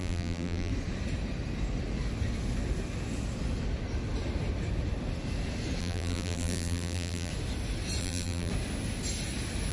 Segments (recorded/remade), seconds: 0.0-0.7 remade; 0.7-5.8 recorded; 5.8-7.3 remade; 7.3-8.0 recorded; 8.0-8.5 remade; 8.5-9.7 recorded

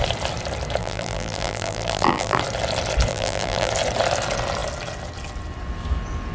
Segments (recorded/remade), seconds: 0.0-0.8 recorded; 0.8-2.4 remade; 2.4-3.1 recorded; 3.1-3.7 remade; 3.7-6.3 recorded

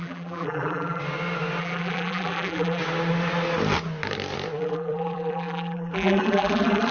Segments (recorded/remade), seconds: 0.0-1.0 remade; 1.0-1.6 recorded; 1.6-2.8 remade; 2.8-4.6 recorded; 4.6-6.9 remade

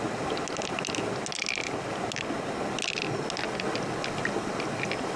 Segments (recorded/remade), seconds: 0.0-5.2 recorded

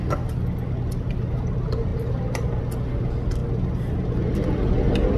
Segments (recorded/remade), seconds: 0.0-1.9 recorded; 1.9-2.6 remade; 2.6-5.2 recorded

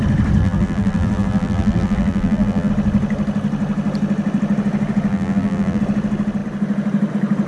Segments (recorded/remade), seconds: 0.0-0.4 recorded; 0.4-2.7 remade; 2.7-5.1 recorded; 5.1-5.8 remade; 5.8-7.5 recorded